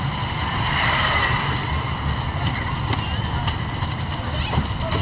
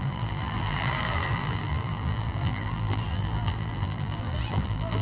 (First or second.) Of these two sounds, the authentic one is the first